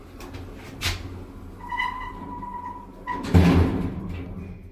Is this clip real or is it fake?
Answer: real